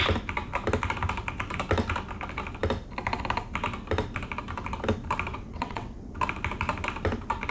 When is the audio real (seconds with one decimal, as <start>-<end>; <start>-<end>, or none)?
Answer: 0.0-5.3; 6.1-7.5

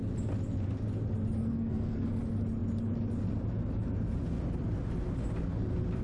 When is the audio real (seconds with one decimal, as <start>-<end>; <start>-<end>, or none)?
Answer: 0.0-1.4; 2.2-6.0

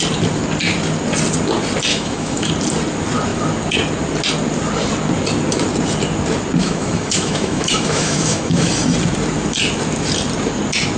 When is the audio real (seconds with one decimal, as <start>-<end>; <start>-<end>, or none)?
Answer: 0.0-1.9; 2.5-6.6; 8.7-11.0

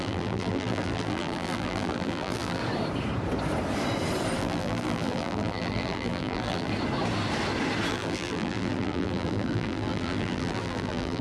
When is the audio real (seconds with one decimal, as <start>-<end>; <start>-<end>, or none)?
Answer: 2.6-4.4; 6.7-7.9

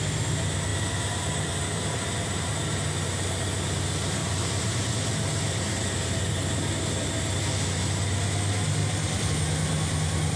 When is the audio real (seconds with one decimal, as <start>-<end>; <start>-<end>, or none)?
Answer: 0.0-0.7; 2.5-4.2; 4.9-10.4